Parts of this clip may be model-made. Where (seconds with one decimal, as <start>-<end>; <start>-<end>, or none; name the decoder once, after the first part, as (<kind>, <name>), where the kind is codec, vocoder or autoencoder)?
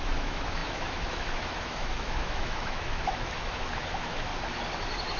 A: 0.0-4.3 (autoencoder, DAC-VAE)